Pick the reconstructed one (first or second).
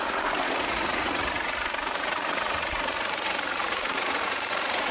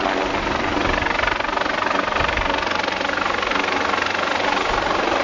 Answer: first